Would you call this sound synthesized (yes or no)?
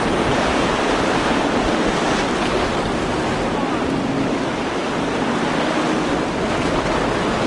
no